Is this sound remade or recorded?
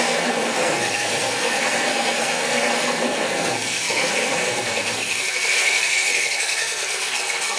remade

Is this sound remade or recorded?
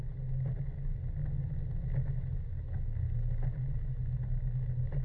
recorded